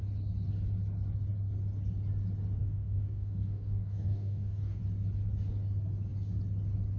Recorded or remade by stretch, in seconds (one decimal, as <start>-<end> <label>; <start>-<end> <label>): 0.0-2.6 recorded; 2.6-4.8 remade; 4.8-7.0 recorded